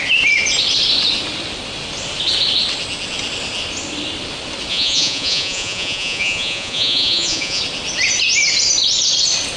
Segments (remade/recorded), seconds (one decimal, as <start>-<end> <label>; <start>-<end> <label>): 0.0-4.7 recorded; 4.7-7.6 remade; 7.6-9.6 recorded